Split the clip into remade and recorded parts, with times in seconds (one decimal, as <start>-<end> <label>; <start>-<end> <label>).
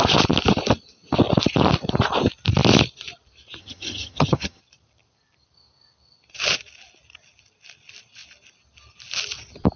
0.0-3.6 recorded; 3.6-4.6 remade; 4.6-9.8 recorded